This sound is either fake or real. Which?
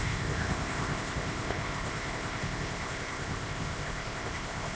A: fake